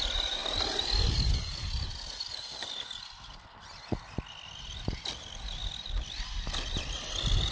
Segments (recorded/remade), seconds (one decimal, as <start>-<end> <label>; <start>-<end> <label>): 0.0-7.5 recorded